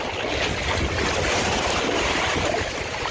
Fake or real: real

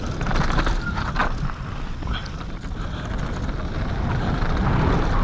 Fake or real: real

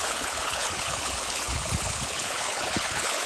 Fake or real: fake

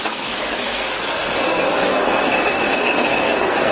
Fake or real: fake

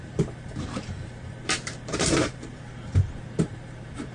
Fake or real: fake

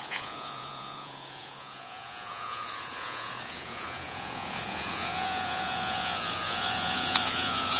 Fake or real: fake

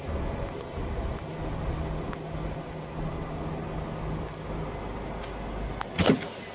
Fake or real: real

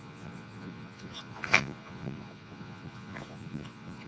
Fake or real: fake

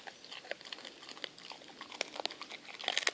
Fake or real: real